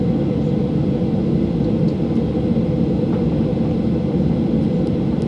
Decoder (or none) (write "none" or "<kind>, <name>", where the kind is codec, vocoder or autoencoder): none